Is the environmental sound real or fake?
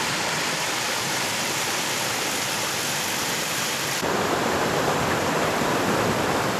fake